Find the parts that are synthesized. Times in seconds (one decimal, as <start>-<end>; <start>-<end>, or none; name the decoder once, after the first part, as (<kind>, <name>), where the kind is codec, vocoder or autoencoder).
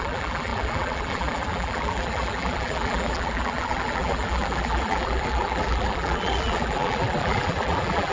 0.0-8.1 (vocoder, BigVGAN v2)